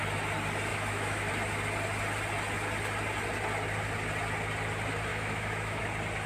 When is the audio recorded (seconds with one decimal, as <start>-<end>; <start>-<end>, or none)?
0.0-0.7; 1.3-5.1; 5.8-6.3